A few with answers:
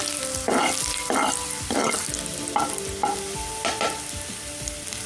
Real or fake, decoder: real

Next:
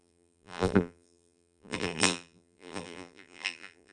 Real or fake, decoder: fake, vocoder, BigVGAN v2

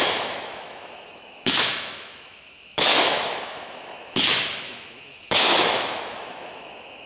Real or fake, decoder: fake, autoencoder, DAC-VAE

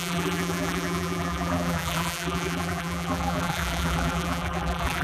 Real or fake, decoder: fake, vocoder, BigVGAN v2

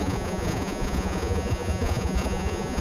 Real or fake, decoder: fake, vocoder, Vocos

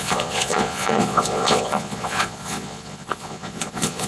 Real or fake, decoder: fake, vocoder, Vocos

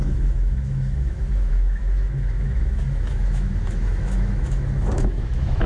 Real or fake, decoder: fake, autoencoder, DAC-VAE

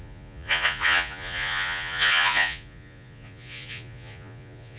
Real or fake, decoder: fake, vocoder, Vocos